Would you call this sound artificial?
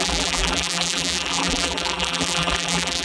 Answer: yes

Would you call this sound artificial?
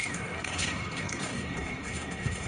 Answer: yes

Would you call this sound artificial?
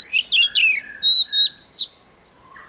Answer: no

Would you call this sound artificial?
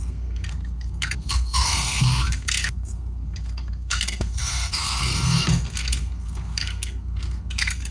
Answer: yes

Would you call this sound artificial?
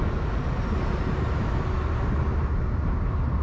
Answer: no